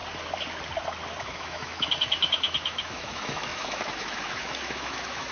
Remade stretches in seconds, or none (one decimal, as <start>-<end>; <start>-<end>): 1.2-5.3